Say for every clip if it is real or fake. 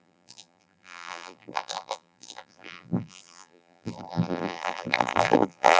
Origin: fake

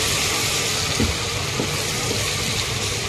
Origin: real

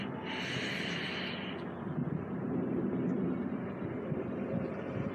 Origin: real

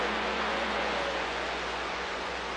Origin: fake